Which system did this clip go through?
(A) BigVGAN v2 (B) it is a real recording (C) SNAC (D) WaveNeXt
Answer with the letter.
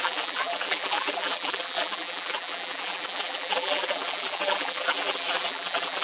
A